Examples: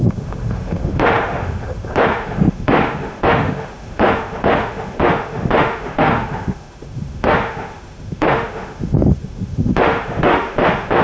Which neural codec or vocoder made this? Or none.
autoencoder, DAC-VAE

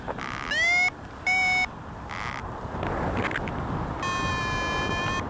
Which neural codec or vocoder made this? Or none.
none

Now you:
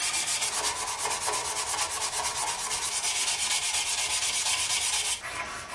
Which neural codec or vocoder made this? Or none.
none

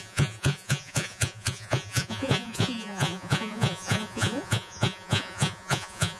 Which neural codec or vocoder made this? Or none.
vocoder, Vocos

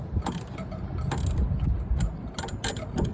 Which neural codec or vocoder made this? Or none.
none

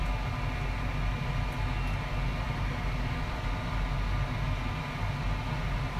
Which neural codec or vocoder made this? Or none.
none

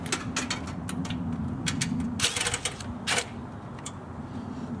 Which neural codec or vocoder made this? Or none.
none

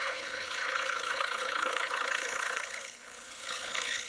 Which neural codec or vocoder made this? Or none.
codec, HILCodec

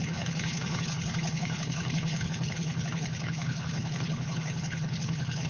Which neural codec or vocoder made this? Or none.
codec, HILCodec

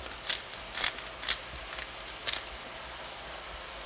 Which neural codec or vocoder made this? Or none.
none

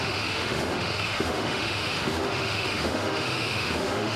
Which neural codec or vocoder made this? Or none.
autoencoder, DAC-VAE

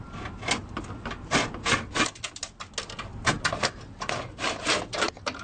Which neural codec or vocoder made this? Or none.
none